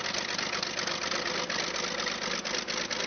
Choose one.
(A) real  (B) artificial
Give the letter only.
A